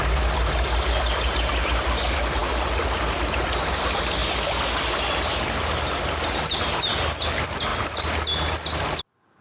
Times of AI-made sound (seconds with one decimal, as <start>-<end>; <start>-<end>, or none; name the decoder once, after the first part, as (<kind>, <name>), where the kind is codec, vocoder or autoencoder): none